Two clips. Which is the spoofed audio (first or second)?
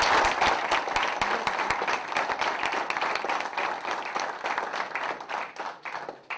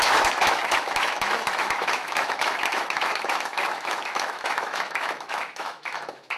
second